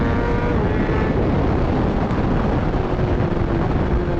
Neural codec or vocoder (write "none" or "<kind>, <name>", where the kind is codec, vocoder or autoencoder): none